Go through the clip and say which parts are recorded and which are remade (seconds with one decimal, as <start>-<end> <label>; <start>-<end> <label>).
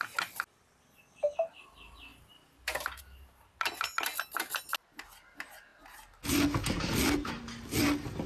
0.0-2.1 recorded; 2.1-3.0 remade; 3.0-8.3 recorded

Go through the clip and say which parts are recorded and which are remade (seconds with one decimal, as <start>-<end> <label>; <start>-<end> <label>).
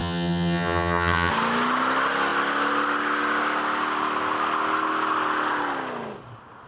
0.0-1.3 remade; 1.3-6.7 recorded